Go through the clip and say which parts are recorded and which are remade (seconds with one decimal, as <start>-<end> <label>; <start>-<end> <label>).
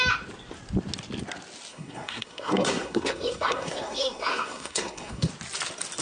0.0-1.7 recorded; 1.7-5.3 remade; 5.3-6.0 recorded